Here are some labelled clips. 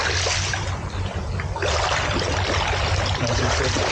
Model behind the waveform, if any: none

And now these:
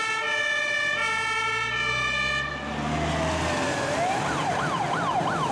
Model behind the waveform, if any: none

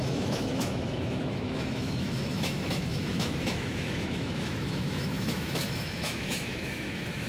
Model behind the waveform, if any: autoencoder, DAC-VAE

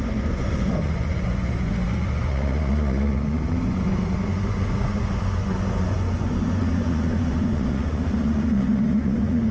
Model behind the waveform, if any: vocoder, Vocos